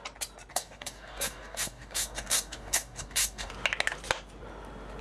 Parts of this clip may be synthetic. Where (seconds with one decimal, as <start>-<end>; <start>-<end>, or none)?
0.5-3.5